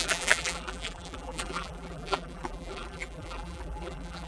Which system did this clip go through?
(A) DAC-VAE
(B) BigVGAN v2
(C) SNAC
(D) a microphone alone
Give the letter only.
B